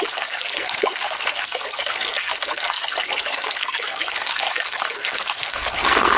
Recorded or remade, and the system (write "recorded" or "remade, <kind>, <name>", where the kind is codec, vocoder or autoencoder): remade, codec, SNAC